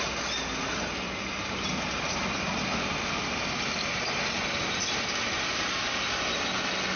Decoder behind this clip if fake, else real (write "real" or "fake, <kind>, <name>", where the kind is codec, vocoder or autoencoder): real